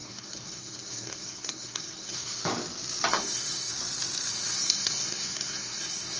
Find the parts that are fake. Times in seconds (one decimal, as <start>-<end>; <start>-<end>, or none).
0.0-2.4; 3.1-3.7; 4.3-6.2